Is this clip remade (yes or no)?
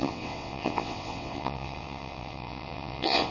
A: yes